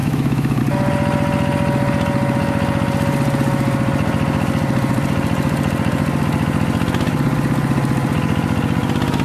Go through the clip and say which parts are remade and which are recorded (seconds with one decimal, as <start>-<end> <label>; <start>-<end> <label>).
0.0-0.6 remade; 0.6-9.2 recorded